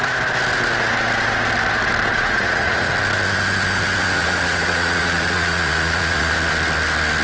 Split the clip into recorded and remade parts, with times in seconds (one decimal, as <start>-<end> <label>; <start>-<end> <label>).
0.0-2.1 recorded; 2.1-2.9 remade; 2.9-4.2 recorded; 4.2-6.3 remade; 6.3-7.2 recorded